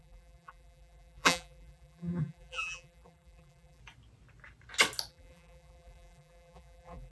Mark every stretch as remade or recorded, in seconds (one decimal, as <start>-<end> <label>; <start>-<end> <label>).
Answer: 0.0-3.8 remade; 3.8-5.1 recorded; 5.1-7.1 remade